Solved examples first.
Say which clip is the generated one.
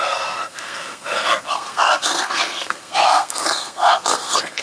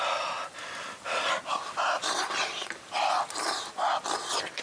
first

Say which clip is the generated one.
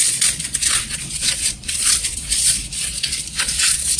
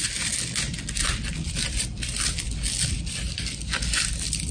first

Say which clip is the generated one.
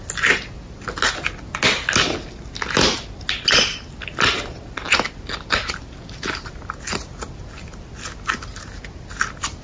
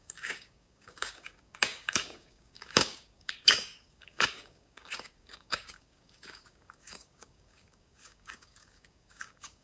second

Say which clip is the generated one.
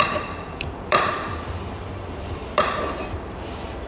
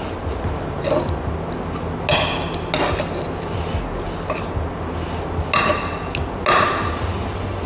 first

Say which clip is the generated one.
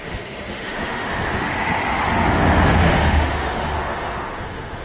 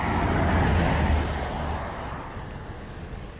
first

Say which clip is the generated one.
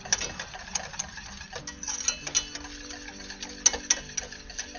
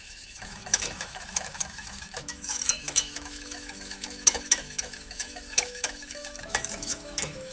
second